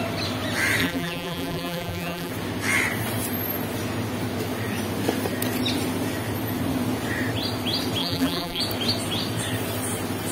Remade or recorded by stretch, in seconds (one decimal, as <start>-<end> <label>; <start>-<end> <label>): 0.0-0.8 recorded; 0.8-2.3 remade; 2.3-8.0 recorded; 8.0-8.6 remade; 8.6-10.3 recorded